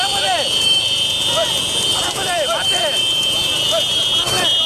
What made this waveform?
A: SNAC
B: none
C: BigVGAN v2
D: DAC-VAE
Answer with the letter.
C